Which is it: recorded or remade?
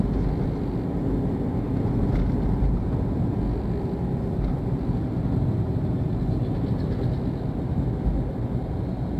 recorded